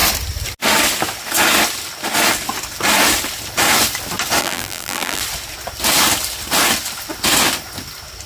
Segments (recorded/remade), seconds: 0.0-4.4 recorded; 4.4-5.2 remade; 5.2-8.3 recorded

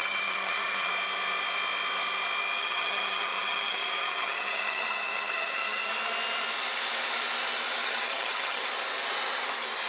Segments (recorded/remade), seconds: 0.0-0.9 remade; 0.9-2.6 recorded; 2.6-5.9 remade; 5.9-7.8 recorded; 7.8-8.6 remade; 8.6-9.9 recorded

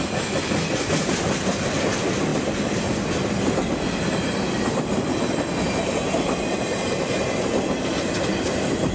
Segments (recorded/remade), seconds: 0.0-8.9 recorded

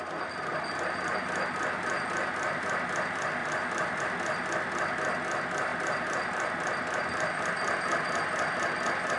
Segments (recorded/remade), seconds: 0.0-3.4 recorded; 3.4-4.0 remade; 4.0-5.7 recorded; 5.7-7.5 remade; 7.5-9.2 recorded

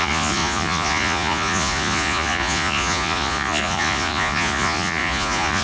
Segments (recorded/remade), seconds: 0.0-5.6 remade

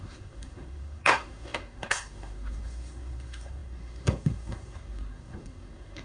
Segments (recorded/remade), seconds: 0.0-6.0 remade